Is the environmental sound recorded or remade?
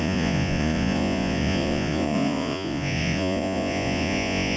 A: remade